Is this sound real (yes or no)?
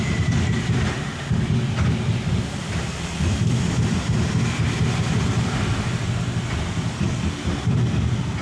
no